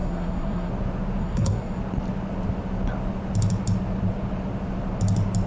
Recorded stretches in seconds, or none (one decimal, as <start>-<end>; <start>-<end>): 0.7-1.2; 1.8-5.5